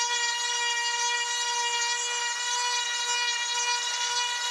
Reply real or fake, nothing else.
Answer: real